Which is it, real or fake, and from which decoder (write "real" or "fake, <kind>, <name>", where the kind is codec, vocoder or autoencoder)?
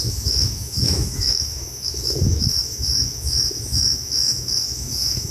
fake, autoencoder, DAC-VAE